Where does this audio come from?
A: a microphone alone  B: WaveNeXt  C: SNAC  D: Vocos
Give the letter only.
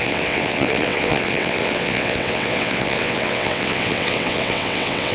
B